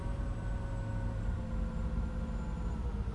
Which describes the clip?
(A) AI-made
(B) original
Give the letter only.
B